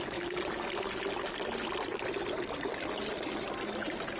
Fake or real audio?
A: real